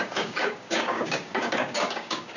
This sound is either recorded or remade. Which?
remade